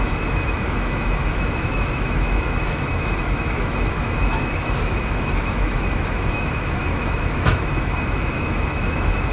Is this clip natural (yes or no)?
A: no